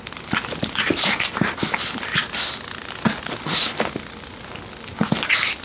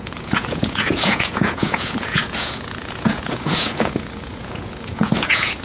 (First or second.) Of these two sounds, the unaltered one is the first